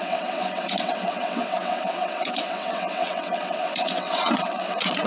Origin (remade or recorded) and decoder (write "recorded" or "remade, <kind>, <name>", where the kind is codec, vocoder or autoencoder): remade, vocoder, WaveNeXt